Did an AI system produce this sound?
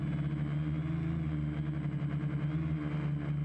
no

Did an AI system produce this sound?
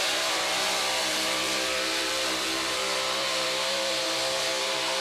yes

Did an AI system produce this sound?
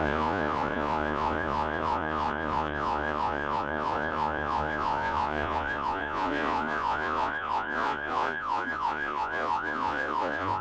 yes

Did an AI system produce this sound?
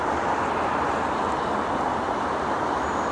no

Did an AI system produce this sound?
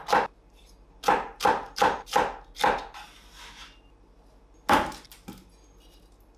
no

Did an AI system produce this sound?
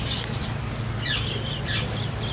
no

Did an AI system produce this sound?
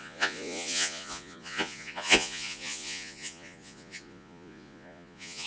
yes